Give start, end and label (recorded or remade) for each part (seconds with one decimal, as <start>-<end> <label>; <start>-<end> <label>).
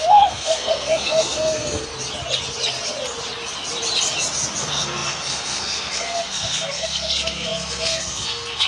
0.0-1.9 remade; 1.9-4.6 recorded; 4.6-8.7 remade